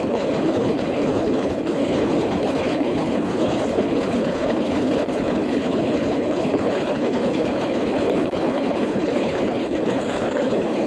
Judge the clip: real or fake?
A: fake